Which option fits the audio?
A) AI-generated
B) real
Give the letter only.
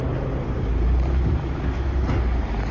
B